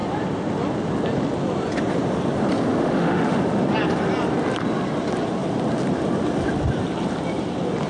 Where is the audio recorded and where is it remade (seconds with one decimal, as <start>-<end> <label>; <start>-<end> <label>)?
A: 0.0-2.7 recorded; 2.7-3.4 remade; 3.4-7.9 recorded